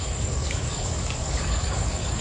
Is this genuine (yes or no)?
no